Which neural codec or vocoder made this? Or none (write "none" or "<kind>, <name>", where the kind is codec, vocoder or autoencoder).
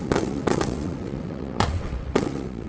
vocoder, WaveNeXt